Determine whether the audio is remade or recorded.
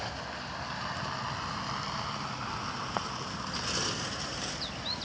recorded